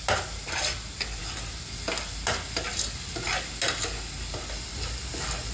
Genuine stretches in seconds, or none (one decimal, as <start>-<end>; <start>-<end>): 0.0-5.5